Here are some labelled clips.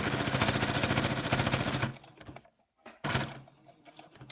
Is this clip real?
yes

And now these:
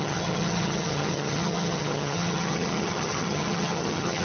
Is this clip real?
no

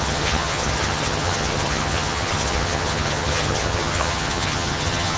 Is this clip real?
no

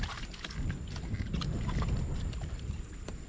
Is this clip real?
yes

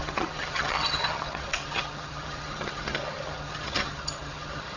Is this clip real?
no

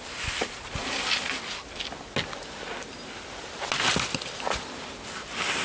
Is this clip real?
yes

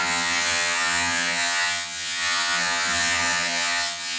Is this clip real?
no